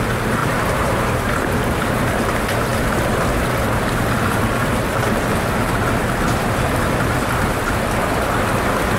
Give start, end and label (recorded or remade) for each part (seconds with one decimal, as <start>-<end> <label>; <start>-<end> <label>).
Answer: 0.0-0.4 recorded; 0.4-1.8 remade; 1.8-9.0 recorded